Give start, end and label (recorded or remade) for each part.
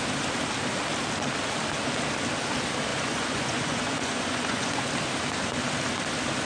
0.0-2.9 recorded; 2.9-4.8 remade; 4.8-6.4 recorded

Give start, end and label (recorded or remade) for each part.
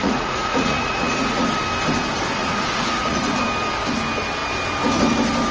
0.0-1.5 remade; 1.5-2.4 recorded; 2.4-3.2 remade; 3.2-5.5 recorded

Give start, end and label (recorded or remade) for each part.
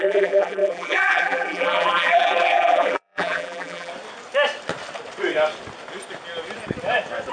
0.0-3.9 remade; 3.9-7.3 recorded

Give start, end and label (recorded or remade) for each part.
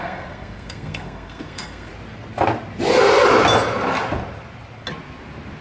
0.0-1.9 remade; 1.9-5.6 recorded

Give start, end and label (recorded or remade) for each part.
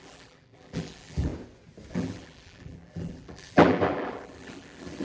0.0-1.3 remade; 1.3-1.9 recorded; 1.9-5.0 remade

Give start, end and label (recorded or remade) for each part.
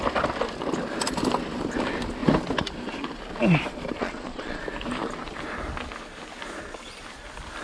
0.0-4.0 recorded; 4.0-4.6 remade; 4.6-7.6 recorded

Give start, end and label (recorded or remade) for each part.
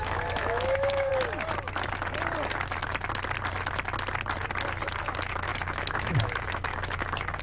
0.0-1.1 remade; 1.1-5.0 recorded; 5.0-7.4 remade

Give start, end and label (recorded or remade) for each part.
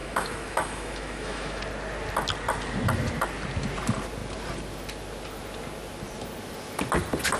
0.0-1.6 remade; 1.6-7.4 recorded